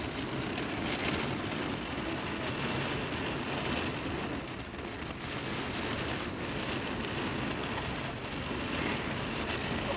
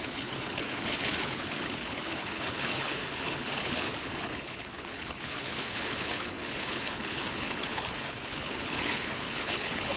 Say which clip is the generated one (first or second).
second